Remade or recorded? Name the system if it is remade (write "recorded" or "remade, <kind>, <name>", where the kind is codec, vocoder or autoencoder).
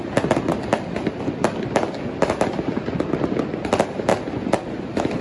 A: recorded